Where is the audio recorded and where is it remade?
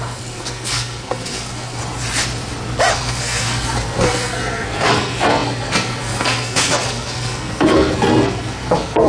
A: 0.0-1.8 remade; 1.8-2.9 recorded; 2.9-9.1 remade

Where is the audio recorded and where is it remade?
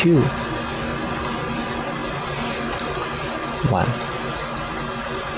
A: 0.0-5.4 recorded